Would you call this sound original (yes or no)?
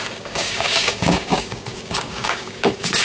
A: no